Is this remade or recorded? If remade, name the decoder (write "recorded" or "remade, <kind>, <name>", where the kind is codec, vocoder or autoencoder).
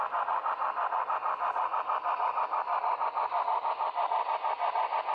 recorded